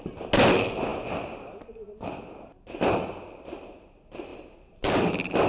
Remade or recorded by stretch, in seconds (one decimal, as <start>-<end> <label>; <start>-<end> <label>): 0.0-4.3 recorded; 4.3-5.1 remade; 5.1-5.5 recorded